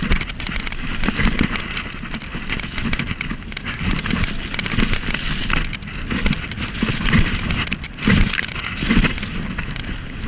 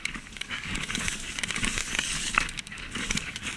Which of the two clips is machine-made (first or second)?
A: second